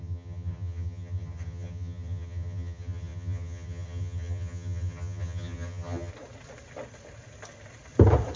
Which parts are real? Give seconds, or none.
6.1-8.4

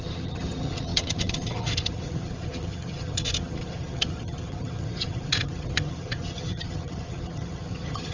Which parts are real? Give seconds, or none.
none